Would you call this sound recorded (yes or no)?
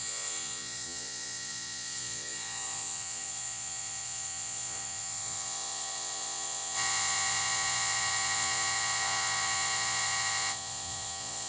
no